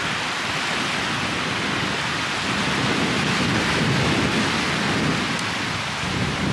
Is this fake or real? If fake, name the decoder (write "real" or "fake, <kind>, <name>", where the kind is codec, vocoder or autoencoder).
real